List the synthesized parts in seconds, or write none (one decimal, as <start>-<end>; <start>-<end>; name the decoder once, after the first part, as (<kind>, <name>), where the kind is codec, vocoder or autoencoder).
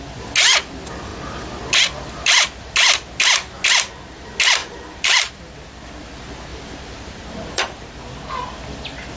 4.6-5.3 (vocoder, BigVGAN v2); 6.5-7.9